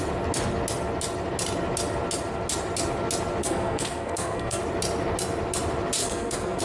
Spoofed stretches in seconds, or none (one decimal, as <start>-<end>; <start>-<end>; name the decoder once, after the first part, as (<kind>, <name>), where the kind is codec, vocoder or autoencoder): 3.4-4.6 (codec, SNAC); 6.0-6.6